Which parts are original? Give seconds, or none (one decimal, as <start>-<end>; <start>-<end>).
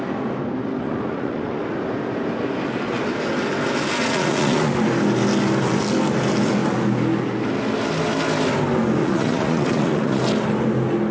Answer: 0.0-0.8; 1.6-4.0; 4.7-9.0; 10.2-11.1